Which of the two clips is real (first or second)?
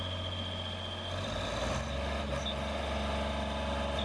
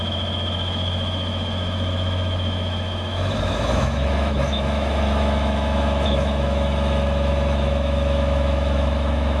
first